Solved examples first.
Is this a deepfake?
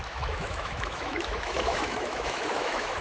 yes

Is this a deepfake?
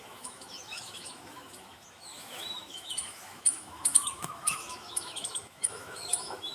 yes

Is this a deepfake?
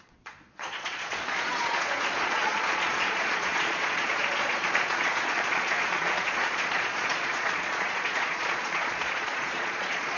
yes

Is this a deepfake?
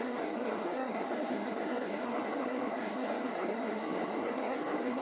yes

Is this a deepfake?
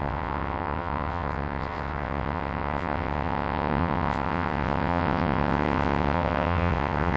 yes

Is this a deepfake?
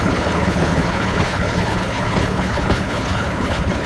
yes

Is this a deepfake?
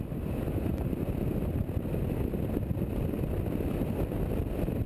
no